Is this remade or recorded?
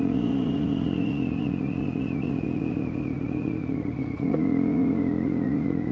remade